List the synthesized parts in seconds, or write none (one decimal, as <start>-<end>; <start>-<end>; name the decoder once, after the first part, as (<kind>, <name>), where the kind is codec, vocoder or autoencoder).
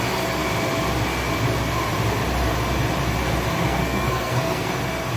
3.6-4.7 (codec, SNAC)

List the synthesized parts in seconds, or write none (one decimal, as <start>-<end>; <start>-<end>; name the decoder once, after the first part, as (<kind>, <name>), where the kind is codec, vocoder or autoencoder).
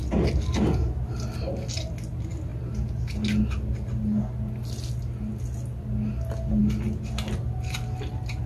none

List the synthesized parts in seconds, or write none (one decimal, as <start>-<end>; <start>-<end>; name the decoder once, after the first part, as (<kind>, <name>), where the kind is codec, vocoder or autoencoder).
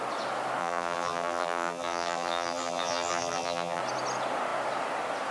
0.6-3.8 (vocoder, BigVGAN v2)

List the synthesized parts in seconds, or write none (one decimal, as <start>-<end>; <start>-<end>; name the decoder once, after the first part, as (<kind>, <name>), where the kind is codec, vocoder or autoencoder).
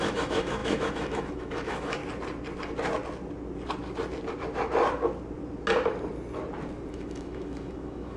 0.0-2.0 (autoencoder, DAC-VAE); 6.9-8.2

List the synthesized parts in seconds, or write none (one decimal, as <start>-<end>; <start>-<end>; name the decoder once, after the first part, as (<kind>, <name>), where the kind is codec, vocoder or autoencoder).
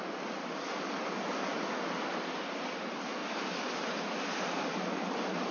0.0-1.3 (vocoder, BigVGAN v2); 2.3-3.2; 4.4-5.5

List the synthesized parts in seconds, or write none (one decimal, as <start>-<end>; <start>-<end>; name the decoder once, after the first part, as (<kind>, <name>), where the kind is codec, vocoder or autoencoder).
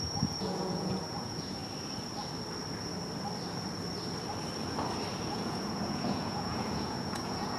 0.0-1.6 (vocoder, Vocos); 5.3-7.6